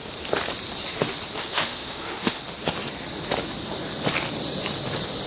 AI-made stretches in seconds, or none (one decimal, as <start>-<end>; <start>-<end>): 1.4-2.4